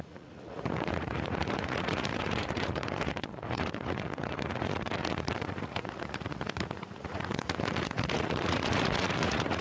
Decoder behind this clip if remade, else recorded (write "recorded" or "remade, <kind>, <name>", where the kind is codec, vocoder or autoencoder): remade, vocoder, Vocos